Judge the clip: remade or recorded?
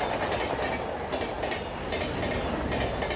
recorded